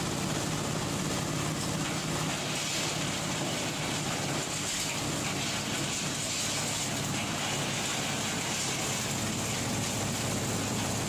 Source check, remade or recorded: recorded